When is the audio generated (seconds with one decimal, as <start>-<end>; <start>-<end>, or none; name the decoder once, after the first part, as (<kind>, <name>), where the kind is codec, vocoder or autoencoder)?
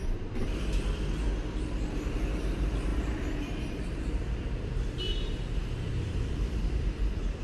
0.0-1.3 (vocoder, BigVGAN v2); 1.9-7.4